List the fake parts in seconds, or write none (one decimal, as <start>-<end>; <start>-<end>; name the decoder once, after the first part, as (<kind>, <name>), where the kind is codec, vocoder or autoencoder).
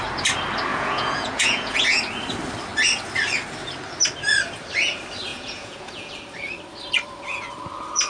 0.7-2.0 (vocoder, Vocos); 5.3-6.1